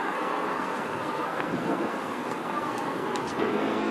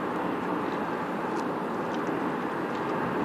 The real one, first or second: second